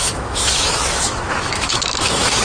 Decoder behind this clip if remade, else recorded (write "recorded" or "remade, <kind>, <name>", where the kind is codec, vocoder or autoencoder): remade, autoencoder, DAC-VAE